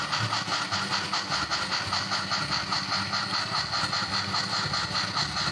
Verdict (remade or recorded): recorded